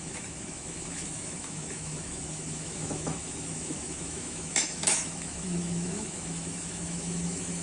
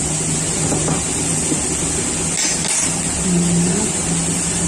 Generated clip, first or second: first